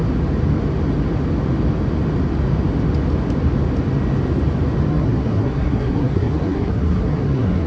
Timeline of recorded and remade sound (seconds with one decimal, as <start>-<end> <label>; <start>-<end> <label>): 0.0-4.9 recorded; 4.9-7.7 remade